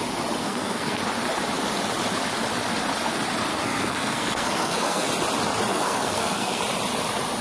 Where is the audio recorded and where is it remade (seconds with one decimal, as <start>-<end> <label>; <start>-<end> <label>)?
0.0-0.4 recorded; 0.4-1.0 remade; 1.0-3.5 recorded; 3.5-5.1 remade; 5.1-5.7 recorded; 5.7-6.6 remade; 6.6-7.4 recorded

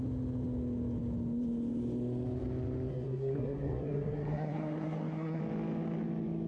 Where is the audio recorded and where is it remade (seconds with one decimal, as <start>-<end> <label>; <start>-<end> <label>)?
0.0-2.9 recorded; 2.9-5.4 remade; 5.4-6.5 recorded

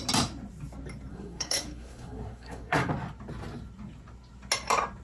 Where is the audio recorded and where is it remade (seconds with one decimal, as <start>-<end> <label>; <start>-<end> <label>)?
0.0-1.1 recorded; 1.1-2.9 remade; 2.9-5.0 recorded